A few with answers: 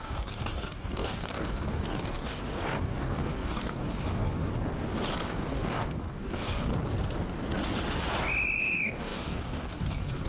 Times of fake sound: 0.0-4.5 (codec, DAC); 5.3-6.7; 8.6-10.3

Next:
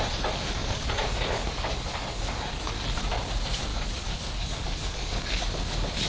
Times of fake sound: 0.6-2.8 (codec, DAC); 3.7-5.4

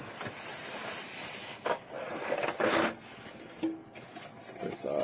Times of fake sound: 1.4-1.9 (codec, DAC)

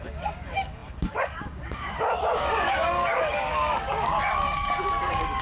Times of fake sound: 0.0-5.4 (codec, DAC)

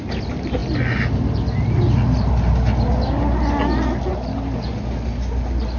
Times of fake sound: none

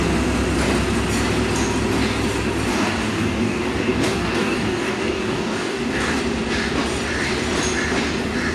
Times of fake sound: 2.7-6.2 (codec, DAC)

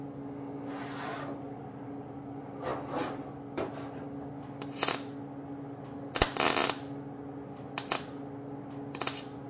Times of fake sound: none